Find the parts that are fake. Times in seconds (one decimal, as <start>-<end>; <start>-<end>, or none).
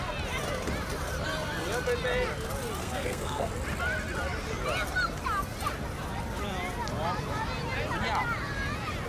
2.8-3.5